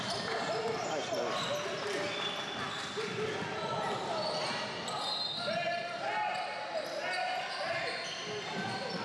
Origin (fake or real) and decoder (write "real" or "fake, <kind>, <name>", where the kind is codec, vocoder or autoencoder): real